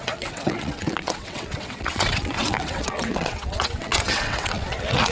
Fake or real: fake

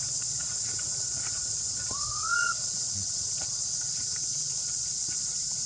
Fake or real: fake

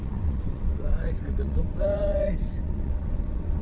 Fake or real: fake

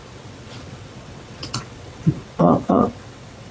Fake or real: fake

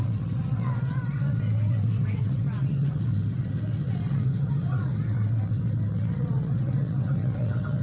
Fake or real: fake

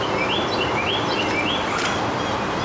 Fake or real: real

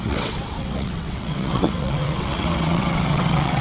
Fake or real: fake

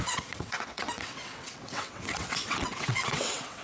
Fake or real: fake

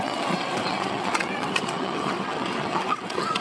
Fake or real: fake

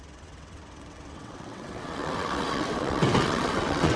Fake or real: fake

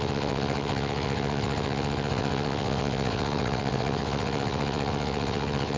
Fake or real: fake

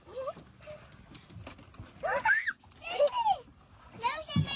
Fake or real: real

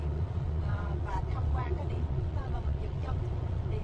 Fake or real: fake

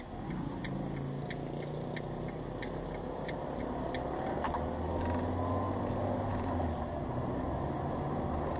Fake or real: real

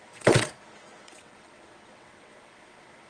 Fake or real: fake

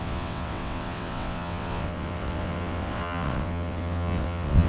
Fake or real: fake